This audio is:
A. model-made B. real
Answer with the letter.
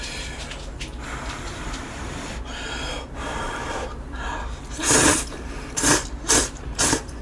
A